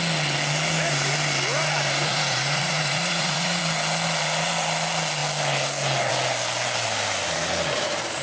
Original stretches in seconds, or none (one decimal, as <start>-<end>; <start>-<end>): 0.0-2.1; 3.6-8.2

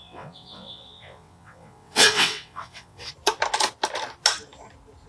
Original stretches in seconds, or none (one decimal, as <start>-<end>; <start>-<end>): 3.1-5.1

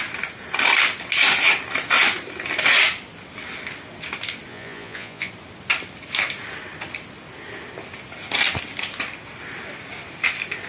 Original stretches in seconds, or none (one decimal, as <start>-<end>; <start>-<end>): 0.0-4.5; 5.3-10.7